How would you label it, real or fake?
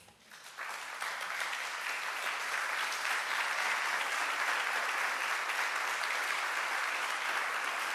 real